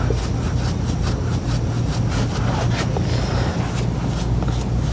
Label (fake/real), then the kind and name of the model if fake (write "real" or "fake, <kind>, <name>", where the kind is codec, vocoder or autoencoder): real